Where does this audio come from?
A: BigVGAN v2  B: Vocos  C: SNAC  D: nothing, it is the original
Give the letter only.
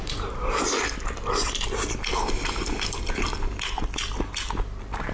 D